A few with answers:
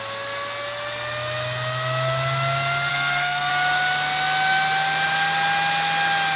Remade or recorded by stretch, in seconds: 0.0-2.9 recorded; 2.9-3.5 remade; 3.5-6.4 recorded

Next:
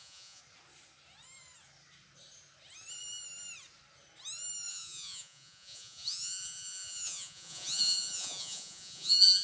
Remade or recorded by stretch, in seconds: 0.0-0.4 remade; 0.4-4.7 recorded; 4.7-9.4 remade

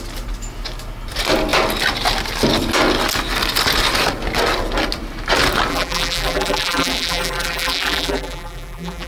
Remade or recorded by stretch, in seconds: 0.0-5.7 recorded; 5.7-9.1 remade